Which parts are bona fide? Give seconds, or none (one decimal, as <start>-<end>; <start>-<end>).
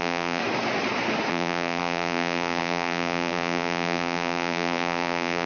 0.4-1.3